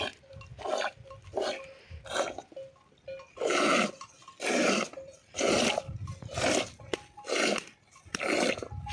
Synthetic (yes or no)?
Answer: no